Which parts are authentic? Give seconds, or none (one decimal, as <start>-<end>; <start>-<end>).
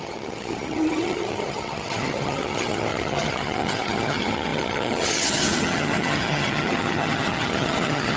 none